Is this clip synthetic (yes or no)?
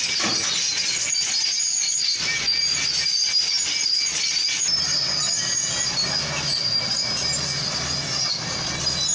no